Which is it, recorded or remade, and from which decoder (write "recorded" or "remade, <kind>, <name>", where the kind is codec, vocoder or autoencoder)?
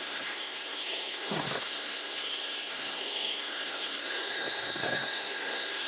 remade, codec, SNAC